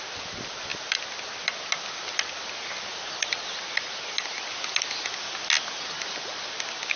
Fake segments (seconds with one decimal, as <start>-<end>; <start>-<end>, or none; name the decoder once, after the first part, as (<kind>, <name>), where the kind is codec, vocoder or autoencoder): none